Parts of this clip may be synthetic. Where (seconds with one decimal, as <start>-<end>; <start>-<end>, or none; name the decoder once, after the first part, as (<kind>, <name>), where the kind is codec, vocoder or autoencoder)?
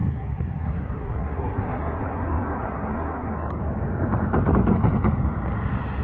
0.0-3.6 (codec, SNAC)